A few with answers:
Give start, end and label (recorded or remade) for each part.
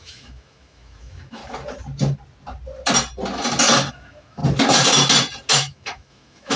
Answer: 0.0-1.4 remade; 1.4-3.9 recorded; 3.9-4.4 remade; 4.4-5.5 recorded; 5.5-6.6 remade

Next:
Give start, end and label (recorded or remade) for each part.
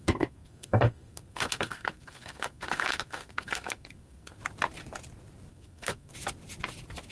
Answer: 0.0-4.4 remade; 4.4-5.5 recorded; 5.5-6.1 remade; 6.1-7.1 recorded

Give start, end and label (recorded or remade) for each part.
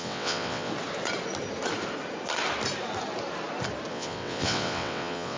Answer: 0.0-0.7 remade; 0.7-3.9 recorded; 3.9-5.4 remade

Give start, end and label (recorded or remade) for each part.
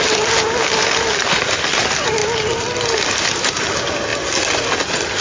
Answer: 0.0-5.2 recorded